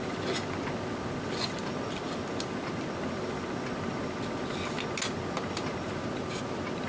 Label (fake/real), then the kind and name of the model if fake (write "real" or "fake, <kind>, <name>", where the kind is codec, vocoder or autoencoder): real